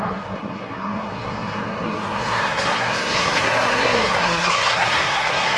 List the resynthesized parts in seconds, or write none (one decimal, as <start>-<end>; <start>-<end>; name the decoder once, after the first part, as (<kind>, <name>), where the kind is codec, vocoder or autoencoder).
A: 0.0-5.6 (codec, SNAC)